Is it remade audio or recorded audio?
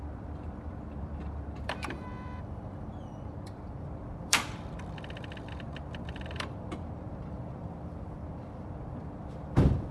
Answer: remade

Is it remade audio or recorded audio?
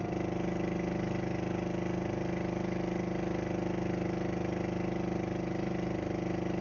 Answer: recorded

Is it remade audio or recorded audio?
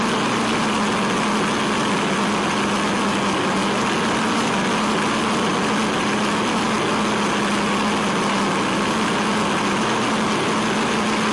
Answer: recorded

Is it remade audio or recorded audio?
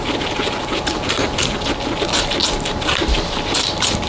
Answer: recorded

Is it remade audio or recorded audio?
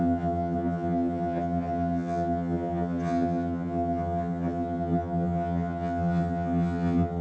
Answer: remade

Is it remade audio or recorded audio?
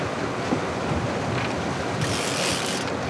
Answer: recorded